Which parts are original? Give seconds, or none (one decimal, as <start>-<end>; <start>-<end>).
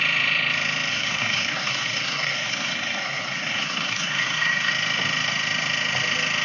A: 0.0-0.9; 4.7-6.4